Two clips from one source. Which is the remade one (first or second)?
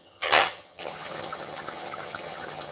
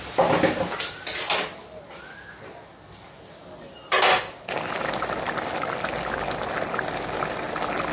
first